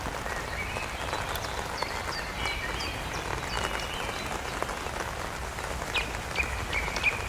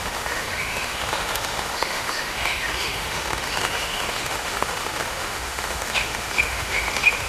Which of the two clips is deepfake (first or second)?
second